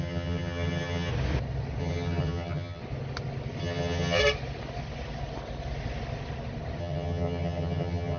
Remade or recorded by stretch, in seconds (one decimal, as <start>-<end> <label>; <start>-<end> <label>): 0.0-1.1 remade; 1.1-1.8 recorded; 1.8-2.8 remade; 2.8-3.6 recorded; 3.6-4.2 remade; 4.2-6.8 recorded; 6.8-8.2 remade